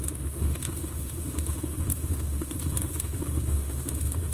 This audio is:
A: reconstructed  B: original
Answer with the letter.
A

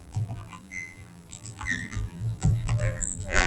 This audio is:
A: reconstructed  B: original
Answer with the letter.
A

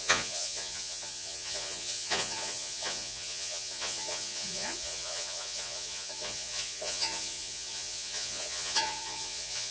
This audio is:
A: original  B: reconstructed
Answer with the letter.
B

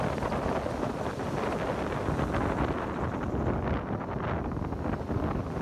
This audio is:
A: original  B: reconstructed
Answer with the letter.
A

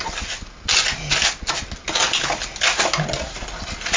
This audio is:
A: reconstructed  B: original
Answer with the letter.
B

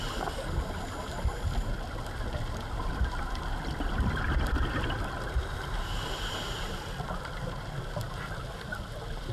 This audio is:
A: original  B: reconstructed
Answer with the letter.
A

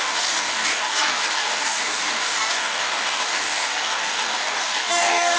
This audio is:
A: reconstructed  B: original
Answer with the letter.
A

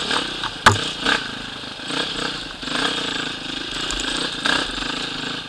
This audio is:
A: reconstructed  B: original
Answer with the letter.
B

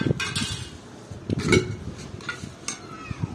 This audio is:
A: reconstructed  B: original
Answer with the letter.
B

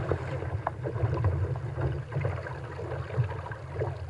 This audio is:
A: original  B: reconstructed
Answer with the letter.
A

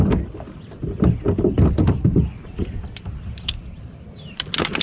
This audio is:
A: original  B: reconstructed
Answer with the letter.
A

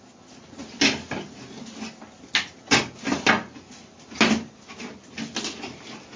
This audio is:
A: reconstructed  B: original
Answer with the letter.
B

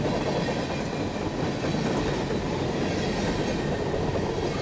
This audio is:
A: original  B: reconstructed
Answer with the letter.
A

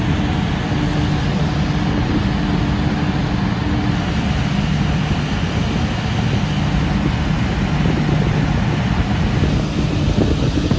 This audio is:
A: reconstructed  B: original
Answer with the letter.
B